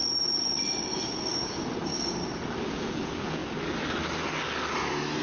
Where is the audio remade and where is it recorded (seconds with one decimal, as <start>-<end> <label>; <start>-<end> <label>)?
0.0-2.7 recorded; 2.7-3.4 remade; 3.4-5.2 recorded